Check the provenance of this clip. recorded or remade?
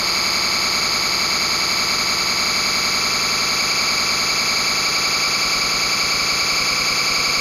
recorded